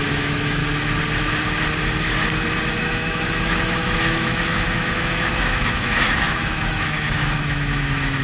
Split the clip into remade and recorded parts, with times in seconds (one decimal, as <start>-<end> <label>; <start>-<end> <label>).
0.0-0.6 remade; 0.6-2.8 recorded; 2.8-8.2 remade